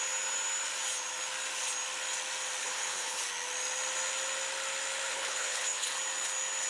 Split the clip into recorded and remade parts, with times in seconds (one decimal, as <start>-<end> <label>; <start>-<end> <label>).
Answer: 0.0-2.6 recorded; 2.6-3.2 remade; 3.2-5.1 recorded; 5.1-5.9 remade; 5.9-6.7 recorded